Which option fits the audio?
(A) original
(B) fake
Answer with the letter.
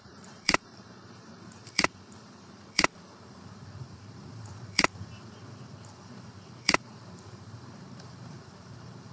B